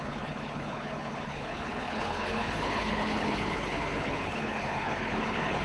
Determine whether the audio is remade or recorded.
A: remade